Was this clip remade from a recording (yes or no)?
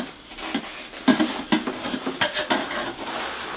no